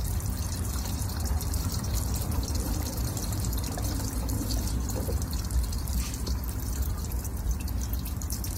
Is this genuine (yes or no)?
no